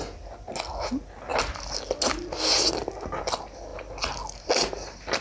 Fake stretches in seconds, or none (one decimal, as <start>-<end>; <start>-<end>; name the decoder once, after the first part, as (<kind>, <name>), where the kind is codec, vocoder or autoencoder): none